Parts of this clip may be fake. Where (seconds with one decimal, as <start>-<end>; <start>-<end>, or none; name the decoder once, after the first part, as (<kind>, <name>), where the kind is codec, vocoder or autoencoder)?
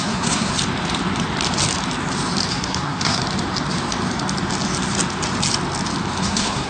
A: 0.0-0.5 (codec, SNAC); 2.5-3.2; 6.2-6.7